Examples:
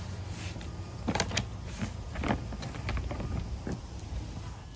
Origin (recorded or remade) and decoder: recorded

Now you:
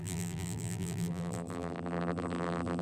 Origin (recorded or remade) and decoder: remade, vocoder, BigVGAN v2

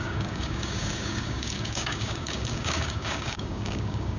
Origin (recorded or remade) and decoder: remade, codec, DAC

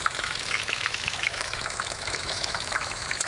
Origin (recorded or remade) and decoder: remade, autoencoder, DAC-VAE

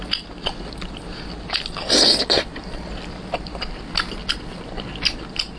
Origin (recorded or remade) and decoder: recorded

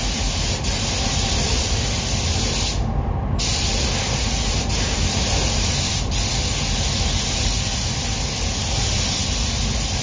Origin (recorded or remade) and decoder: recorded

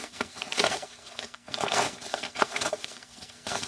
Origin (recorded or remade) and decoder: remade, codec, SNAC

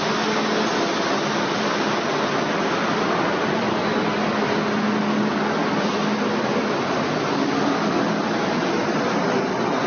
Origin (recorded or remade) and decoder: recorded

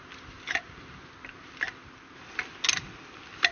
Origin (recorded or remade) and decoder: recorded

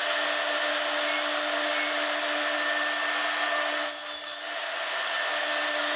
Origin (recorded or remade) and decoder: recorded